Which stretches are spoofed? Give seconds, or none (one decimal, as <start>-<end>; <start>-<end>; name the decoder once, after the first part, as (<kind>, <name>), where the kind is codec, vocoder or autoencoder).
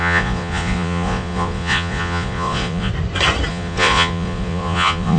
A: 0.0-2.9 (vocoder, Vocos); 3.5-5.2